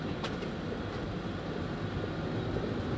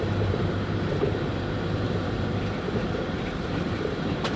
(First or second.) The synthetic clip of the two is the second